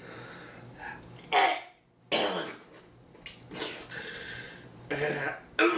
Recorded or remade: recorded